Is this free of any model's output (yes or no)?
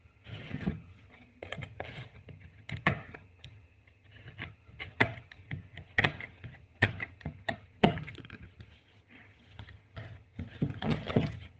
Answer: no